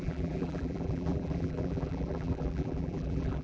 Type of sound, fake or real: fake